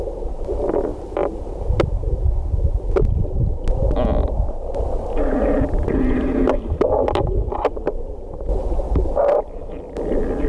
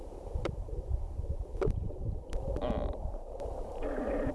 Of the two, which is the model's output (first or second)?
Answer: second